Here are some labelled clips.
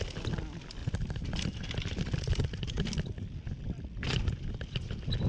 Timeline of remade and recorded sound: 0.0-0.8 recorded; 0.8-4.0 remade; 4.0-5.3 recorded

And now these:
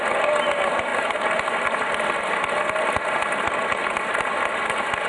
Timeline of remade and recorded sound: 0.0-5.1 recorded